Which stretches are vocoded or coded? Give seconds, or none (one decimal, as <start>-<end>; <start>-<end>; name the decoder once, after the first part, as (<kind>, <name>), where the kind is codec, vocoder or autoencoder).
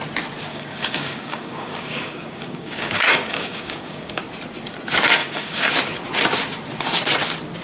0.5-4.2 (codec, DAC); 5.2-5.7